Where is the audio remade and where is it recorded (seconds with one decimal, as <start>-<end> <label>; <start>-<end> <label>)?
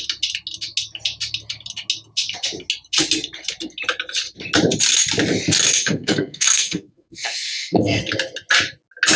0.0-5.8 recorded; 5.8-8.0 remade; 8.0-9.2 recorded